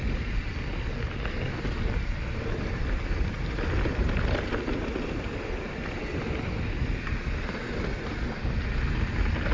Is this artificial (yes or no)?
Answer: no